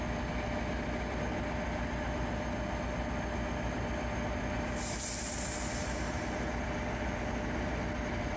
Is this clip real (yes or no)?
yes